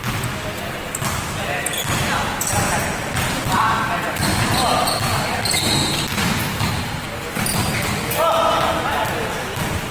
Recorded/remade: recorded